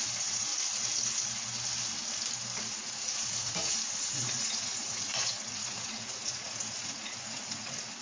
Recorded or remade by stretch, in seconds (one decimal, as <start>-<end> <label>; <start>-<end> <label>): 0.0-0.5 remade; 0.5-2.6 recorded; 2.6-8.0 remade